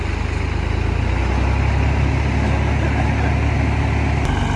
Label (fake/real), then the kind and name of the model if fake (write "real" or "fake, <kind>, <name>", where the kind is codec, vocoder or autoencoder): real